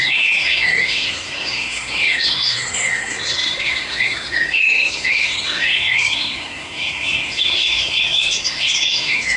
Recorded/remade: remade